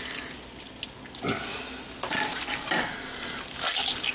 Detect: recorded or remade recorded